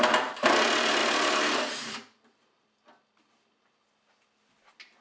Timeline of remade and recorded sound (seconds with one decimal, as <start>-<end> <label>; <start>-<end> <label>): 0.0-1.0 recorded; 1.0-2.7 remade; 2.7-5.0 recorded